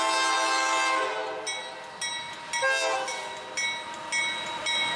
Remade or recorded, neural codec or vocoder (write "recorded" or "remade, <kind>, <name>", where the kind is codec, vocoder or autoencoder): recorded